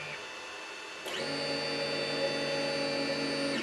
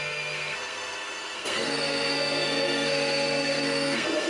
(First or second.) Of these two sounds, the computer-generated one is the second